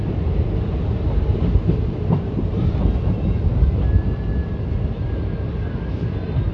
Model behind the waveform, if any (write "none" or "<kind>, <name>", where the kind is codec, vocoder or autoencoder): none